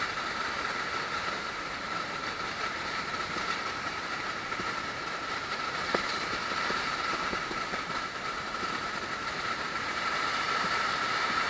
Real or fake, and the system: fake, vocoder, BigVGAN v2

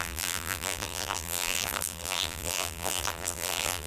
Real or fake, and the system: fake, vocoder, BigVGAN v2